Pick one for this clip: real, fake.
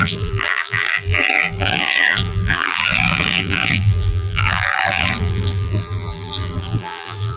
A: fake